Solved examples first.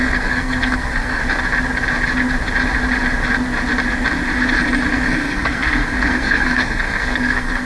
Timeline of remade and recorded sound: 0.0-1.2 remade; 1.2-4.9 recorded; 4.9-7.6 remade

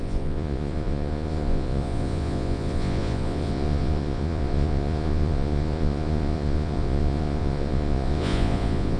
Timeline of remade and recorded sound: 0.0-9.0 remade

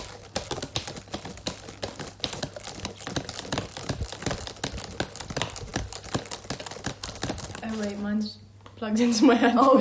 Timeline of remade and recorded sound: 0.0-9.8 recorded

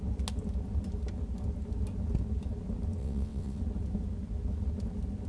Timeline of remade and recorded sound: 0.0-3.0 recorded; 3.0-3.6 remade; 3.6-5.3 recorded

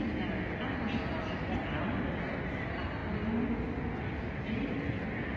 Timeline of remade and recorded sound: 0.0-5.4 recorded

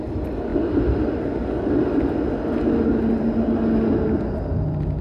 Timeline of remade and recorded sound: 0.0-5.0 recorded

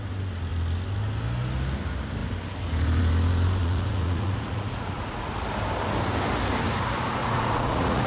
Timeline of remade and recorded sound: 0.0-3.6 recorded; 3.6-5.3 remade; 5.3-7.2 recorded; 7.2-8.1 remade

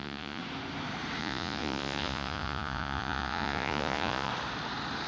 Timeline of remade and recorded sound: 0.0-0.4 remade; 0.4-1.2 recorded; 1.2-4.3 remade; 4.3-5.1 recorded